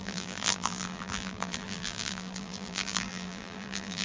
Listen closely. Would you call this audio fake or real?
fake